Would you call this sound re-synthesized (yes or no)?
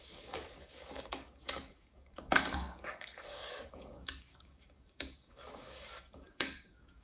yes